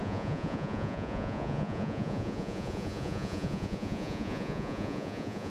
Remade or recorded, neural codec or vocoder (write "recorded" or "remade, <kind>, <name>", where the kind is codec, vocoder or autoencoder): remade, vocoder, Vocos